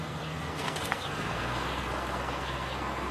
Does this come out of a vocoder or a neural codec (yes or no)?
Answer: yes